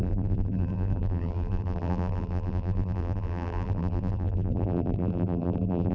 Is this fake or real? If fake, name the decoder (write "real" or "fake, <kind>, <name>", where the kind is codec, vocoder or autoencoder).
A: fake, vocoder, BigVGAN v2